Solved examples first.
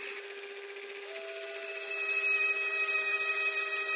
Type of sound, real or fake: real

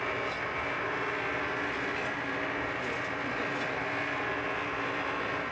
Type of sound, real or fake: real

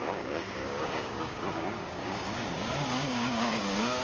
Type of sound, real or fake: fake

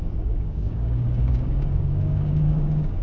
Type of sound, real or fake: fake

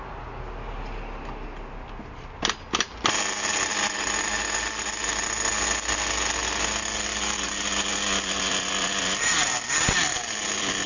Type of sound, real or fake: real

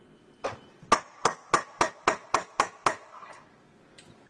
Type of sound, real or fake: real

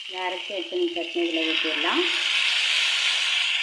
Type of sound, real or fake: real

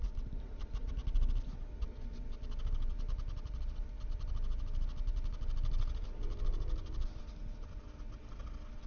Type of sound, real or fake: real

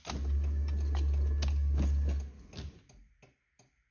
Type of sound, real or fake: real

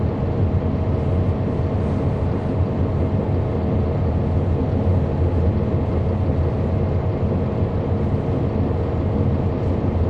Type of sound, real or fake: real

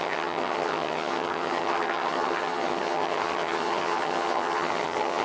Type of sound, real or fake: fake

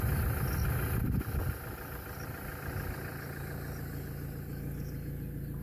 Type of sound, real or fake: real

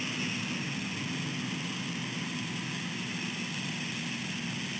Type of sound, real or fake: real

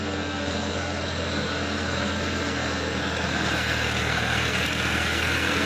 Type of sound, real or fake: fake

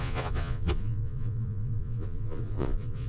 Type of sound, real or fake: fake